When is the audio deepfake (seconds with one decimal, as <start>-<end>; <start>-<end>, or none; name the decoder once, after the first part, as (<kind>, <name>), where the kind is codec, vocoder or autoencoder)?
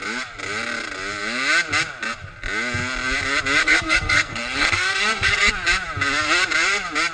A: 3.6-5.5 (codec, SNAC)